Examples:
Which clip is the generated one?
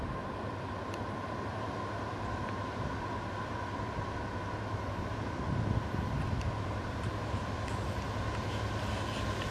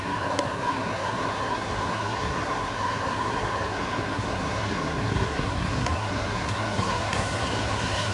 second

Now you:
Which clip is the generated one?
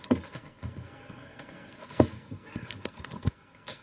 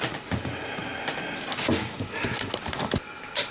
first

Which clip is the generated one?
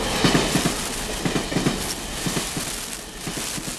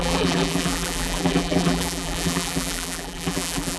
second